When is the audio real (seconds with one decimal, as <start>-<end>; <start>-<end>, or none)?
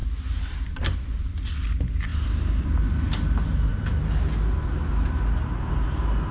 0.0-6.3